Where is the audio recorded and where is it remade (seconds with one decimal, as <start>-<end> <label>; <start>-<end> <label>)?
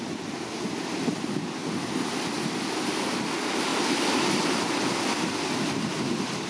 0.0-6.5 recorded